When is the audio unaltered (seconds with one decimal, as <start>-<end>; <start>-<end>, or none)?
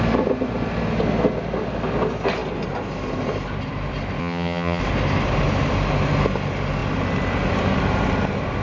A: 0.0-4.2; 4.8-8.6